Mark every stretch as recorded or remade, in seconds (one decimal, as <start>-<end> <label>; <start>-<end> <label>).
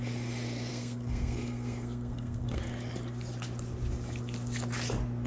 0.0-0.7 recorded; 0.7-2.6 remade; 2.6-5.3 recorded